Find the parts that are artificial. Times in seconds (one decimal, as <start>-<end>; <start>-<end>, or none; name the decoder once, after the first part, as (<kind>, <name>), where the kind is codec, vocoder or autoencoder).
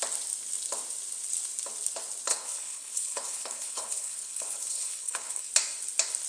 2.3-5.5 (codec, HILCodec)